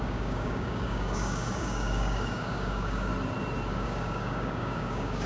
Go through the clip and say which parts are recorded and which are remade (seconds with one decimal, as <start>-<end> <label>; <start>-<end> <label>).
0.0-3.1 remade; 3.1-3.7 recorded; 3.7-5.3 remade